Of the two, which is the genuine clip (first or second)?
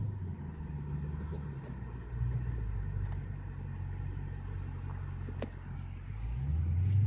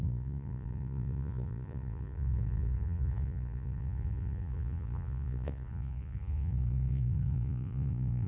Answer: first